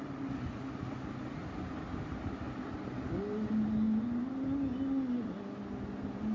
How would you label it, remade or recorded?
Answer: recorded